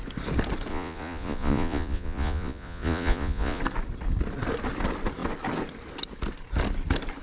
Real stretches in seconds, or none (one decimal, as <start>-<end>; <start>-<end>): 0.0-0.7; 3.6-7.2